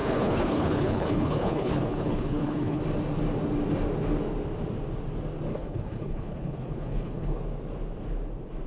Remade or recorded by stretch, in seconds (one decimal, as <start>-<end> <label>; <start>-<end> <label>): 0.0-2.8 remade; 2.8-5.5 recorded; 5.5-7.4 remade; 7.4-8.7 recorded